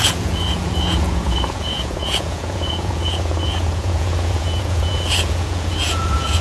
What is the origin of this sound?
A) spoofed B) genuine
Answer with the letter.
A